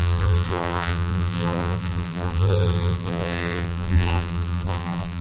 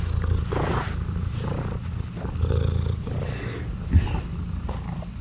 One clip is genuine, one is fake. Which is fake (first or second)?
first